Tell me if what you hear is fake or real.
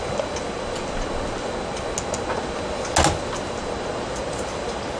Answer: real